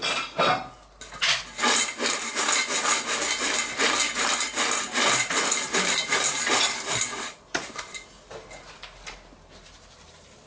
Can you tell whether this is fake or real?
real